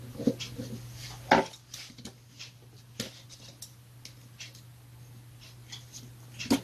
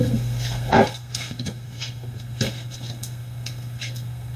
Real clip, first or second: first